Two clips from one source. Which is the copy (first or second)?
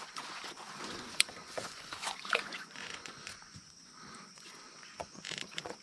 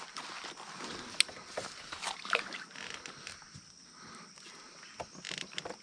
first